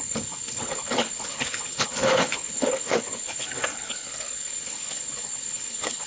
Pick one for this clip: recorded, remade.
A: remade